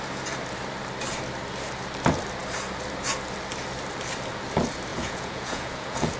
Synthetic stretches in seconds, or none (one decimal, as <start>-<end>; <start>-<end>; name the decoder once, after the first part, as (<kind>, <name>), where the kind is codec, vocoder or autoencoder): 4.9-6.2 (vocoder, Vocos)